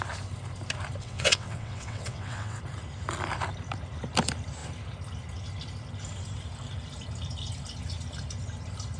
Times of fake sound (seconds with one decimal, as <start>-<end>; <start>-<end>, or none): 1.0-2.6